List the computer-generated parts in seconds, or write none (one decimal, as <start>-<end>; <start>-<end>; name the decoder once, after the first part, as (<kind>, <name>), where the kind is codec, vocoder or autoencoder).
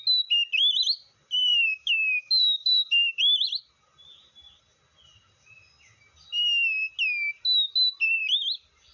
1.5-3.2 (codec, DAC)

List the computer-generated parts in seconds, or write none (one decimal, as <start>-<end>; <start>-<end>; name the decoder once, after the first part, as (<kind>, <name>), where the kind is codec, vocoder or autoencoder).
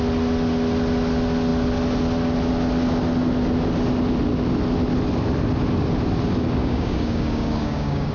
6.6-8.1 (codec, DAC)